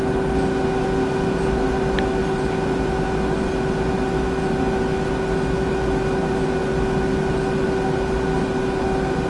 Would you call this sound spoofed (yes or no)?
no